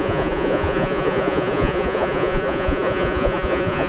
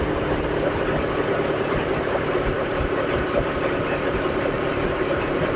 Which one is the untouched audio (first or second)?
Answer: second